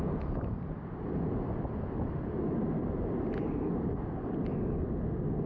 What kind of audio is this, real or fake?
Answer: real